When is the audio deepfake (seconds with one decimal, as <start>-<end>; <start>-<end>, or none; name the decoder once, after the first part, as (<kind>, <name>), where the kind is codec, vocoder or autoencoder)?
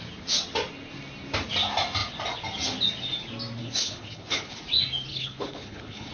3.6-4.6 (codec, HILCodec); 5.1-6.1